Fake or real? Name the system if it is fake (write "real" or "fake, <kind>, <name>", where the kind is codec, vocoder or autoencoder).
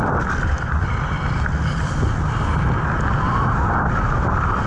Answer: real